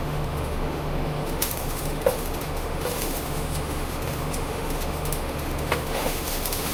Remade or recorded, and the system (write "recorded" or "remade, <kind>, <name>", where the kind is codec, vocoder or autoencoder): remade, autoencoder, DAC-VAE